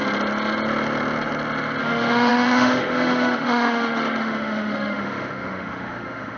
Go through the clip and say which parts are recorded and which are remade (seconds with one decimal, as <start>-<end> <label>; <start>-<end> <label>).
0.0-1.8 recorded; 1.8-6.4 remade